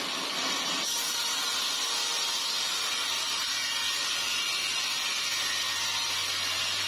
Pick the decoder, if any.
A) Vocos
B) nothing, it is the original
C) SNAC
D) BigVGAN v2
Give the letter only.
B